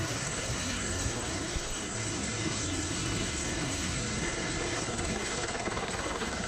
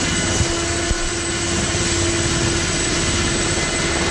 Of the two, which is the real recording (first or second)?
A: second